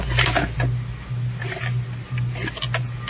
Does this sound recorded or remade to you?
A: recorded